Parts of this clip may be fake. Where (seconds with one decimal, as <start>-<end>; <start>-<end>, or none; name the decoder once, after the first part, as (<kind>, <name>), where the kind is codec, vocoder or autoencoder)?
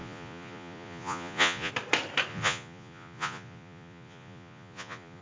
0.0-1.7 (vocoder, Vocos); 2.3-5.2